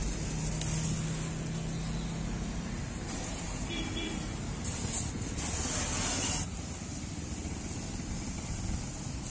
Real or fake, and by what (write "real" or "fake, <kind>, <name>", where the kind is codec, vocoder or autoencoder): real